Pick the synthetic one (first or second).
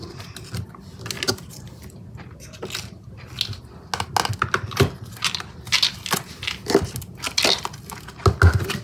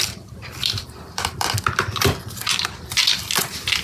second